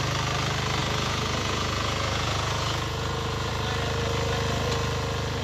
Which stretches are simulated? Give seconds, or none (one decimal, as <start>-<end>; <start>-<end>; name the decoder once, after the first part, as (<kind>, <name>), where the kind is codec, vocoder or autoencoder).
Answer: 0.8-3.5 (vocoder, Vocos)